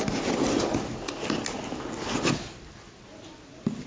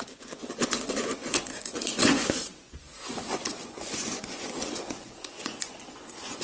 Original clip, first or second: first